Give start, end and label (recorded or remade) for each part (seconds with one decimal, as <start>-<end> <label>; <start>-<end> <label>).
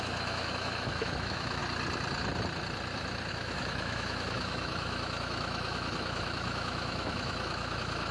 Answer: 0.0-1.6 remade; 1.6-3.3 recorded; 3.3-8.1 remade